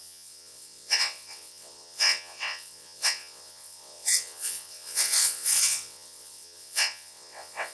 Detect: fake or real fake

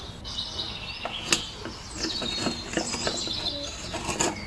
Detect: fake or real real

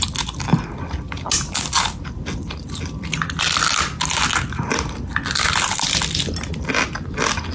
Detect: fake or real real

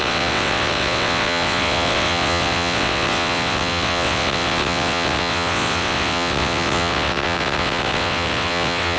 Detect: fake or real fake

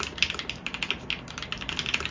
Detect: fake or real real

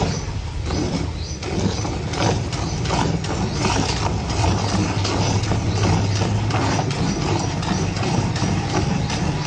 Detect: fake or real real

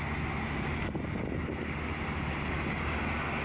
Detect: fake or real real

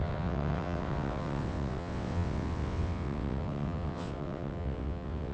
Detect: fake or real fake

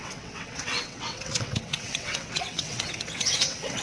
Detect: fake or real fake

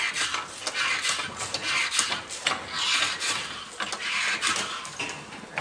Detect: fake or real real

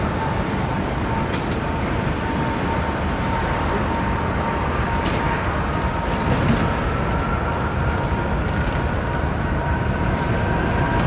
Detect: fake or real real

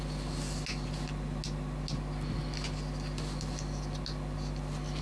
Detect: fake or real real